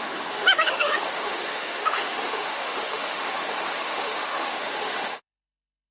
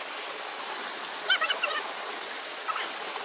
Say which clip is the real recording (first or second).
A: second